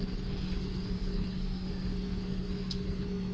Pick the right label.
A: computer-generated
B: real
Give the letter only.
A